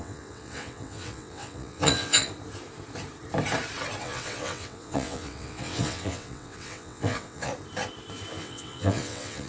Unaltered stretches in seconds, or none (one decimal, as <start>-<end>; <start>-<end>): 2.3-4.0; 7.5-8.4